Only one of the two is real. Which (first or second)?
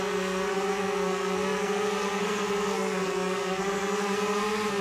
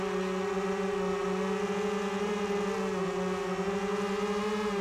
second